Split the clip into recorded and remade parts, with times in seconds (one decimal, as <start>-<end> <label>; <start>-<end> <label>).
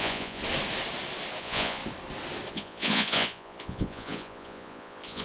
0.0-0.4 remade; 0.4-1.4 recorded; 1.4-1.8 remade; 1.8-2.5 recorded; 2.5-5.2 remade